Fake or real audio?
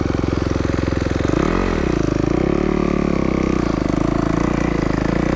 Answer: real